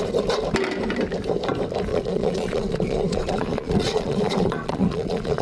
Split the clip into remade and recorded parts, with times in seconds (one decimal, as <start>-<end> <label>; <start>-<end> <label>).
0.0-1.9 recorded; 1.9-5.4 remade